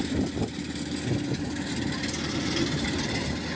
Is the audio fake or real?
real